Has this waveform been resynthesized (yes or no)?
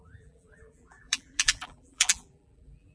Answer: yes